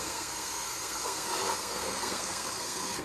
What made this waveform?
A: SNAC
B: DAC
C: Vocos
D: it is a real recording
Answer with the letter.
A